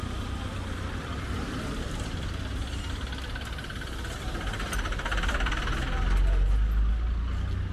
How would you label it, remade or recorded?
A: recorded